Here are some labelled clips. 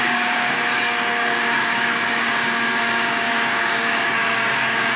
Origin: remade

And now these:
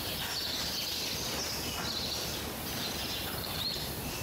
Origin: recorded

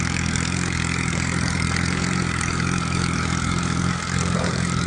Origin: remade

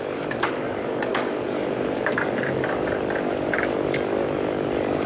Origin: remade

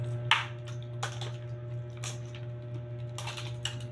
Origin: recorded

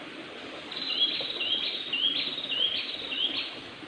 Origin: recorded